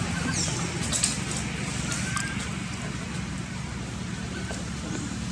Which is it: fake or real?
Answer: real